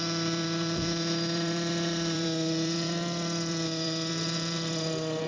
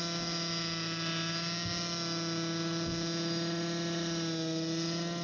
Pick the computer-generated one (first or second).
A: first